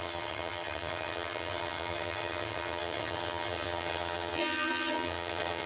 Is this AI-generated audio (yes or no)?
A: yes